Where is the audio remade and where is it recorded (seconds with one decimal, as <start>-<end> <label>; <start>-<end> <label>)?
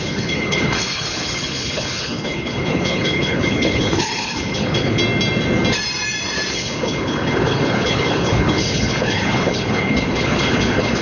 0.0-5.0 remade; 5.0-6.5 recorded; 6.5-11.0 remade